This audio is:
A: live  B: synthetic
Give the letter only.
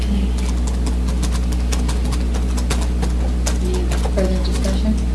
A